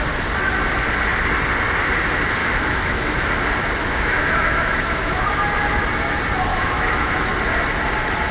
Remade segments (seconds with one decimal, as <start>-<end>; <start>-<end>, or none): 2.4-3.3; 3.8-5.2; 6.5-7.3

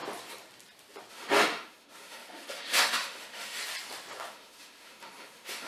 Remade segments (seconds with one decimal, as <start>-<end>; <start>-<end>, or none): 1.1-3.6; 4.3-5.7

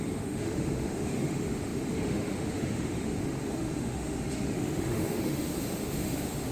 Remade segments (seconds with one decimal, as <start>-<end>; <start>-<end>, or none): 0.0-6.5

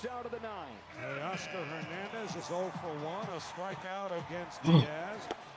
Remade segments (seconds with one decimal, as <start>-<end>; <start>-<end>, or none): 3.3-4.3

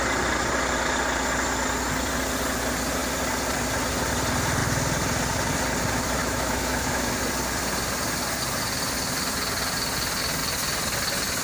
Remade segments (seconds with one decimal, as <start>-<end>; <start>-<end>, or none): 6.2-7.1

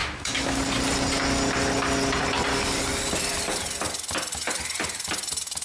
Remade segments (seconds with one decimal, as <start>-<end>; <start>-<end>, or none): 0.0-0.6

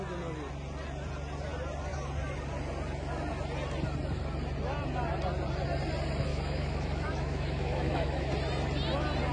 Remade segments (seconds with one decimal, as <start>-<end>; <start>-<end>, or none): 6.3-8.3